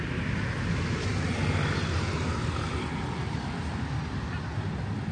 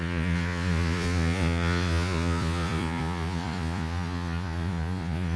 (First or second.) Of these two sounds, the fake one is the second